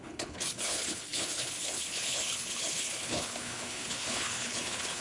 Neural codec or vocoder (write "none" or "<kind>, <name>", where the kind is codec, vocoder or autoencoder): codec, HILCodec